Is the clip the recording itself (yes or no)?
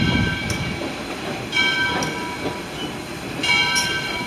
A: yes